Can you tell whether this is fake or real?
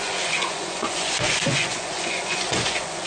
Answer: fake